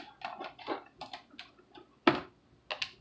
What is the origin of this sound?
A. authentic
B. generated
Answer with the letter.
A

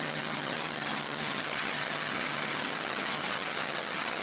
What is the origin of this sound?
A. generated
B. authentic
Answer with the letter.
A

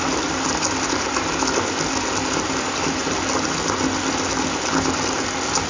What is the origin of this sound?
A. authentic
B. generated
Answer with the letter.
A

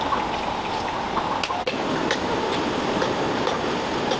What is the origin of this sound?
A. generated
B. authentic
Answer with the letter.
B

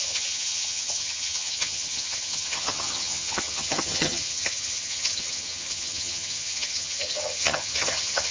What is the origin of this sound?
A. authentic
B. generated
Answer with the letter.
B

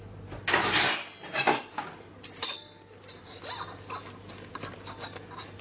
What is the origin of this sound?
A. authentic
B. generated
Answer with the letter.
A